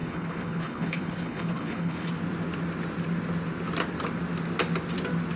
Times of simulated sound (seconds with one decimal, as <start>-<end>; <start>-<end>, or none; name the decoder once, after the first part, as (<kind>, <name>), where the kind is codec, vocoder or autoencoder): 0.0-2.1 (codec, HILCodec)